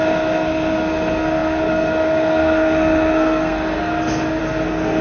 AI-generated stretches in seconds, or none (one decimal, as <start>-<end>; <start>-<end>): 0.0-5.0